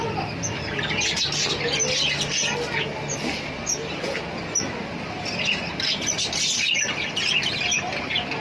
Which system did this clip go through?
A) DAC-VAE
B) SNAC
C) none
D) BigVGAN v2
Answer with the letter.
C